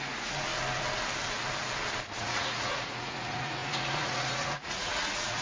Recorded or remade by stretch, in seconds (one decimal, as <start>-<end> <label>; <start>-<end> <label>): 0.0-0.5 remade; 0.5-2.2 recorded; 2.2-5.4 remade